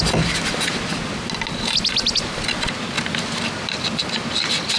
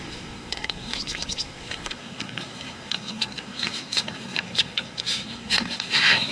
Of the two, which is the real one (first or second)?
first